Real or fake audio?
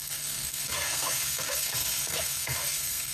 fake